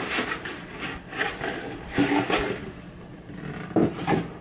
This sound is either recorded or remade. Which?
recorded